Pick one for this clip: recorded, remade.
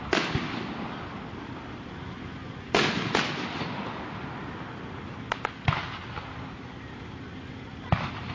recorded